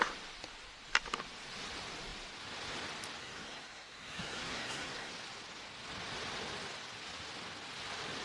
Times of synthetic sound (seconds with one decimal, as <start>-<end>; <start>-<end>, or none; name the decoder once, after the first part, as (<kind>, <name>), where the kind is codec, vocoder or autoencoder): 3.2-5.1 (codec, SNAC)